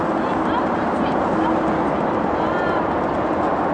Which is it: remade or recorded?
recorded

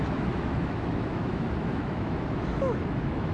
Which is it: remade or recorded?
remade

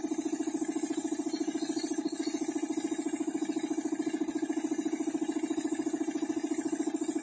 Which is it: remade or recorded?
recorded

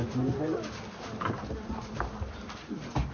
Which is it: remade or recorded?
recorded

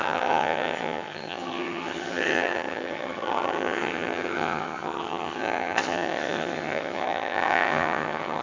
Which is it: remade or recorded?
remade